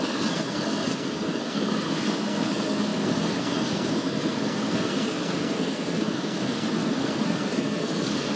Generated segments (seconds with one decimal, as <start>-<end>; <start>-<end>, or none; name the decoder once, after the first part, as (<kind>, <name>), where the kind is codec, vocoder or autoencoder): 0.0-8.4 (codec, SNAC)